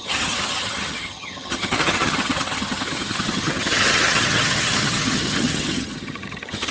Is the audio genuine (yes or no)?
no